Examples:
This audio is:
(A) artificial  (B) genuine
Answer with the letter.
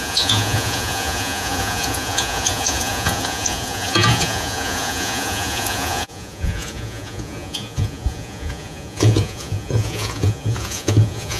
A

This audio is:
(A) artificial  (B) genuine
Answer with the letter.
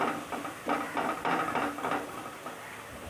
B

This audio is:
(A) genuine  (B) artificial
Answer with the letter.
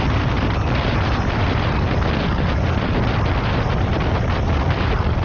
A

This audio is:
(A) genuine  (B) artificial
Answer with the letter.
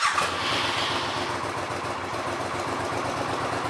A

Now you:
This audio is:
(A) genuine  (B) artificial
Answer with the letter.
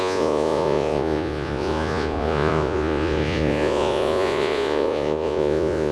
B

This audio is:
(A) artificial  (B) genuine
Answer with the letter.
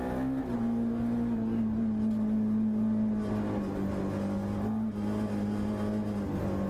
B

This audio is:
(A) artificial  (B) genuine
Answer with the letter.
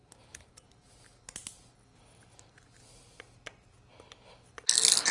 B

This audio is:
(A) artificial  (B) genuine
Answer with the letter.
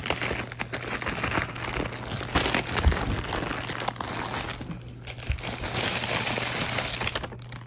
B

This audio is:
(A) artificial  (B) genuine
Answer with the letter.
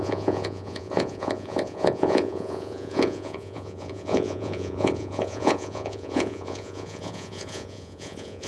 A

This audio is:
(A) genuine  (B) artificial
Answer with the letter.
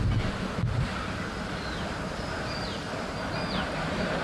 A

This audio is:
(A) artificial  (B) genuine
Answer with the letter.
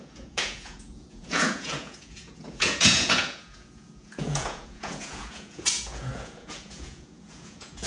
A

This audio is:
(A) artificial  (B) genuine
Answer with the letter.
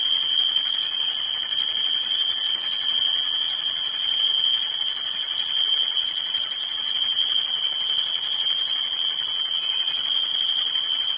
A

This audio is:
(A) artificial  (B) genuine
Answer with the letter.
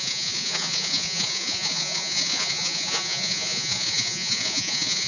A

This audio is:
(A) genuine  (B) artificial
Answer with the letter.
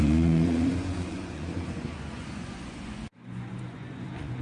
B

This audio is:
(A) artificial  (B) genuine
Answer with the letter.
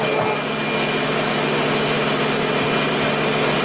B